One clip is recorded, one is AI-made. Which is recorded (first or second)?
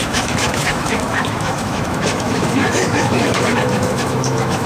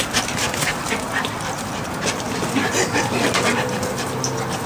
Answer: second